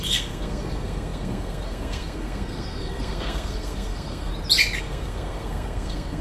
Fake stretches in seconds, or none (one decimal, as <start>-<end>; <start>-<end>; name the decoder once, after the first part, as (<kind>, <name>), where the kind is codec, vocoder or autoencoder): 0.0-4.3 (codec, SNAC); 4.8-6.2